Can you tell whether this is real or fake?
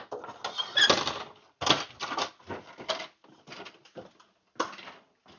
real